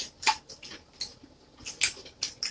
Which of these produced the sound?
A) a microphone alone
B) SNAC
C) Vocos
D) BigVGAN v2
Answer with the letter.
A